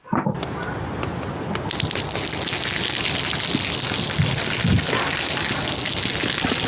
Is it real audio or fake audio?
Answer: real